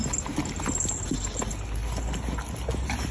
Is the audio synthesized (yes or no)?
no